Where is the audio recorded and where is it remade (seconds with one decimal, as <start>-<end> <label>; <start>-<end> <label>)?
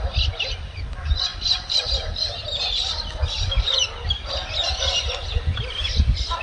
0.0-6.4 recorded